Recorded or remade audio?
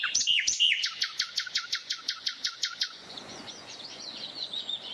remade